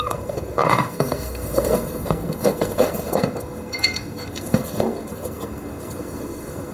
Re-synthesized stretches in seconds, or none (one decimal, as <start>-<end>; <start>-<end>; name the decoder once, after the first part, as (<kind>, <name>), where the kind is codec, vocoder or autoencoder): 0.0-6.7 (codec, SNAC)